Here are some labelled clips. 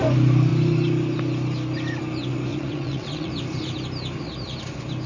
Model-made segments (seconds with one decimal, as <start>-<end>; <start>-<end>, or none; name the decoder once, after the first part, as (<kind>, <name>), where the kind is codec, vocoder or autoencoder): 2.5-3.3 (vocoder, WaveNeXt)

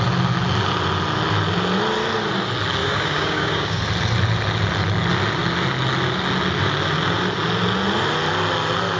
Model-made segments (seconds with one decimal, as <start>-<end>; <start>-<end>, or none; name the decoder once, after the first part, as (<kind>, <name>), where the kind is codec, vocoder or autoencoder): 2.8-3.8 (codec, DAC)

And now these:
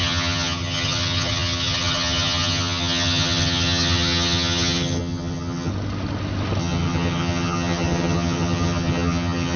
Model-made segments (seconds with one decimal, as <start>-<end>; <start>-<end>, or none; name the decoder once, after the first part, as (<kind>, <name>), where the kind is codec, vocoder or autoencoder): 0.0-5.7 (vocoder, HiFi-GAN); 6.6-9.6